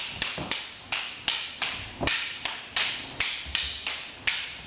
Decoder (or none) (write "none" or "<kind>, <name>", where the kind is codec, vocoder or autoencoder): none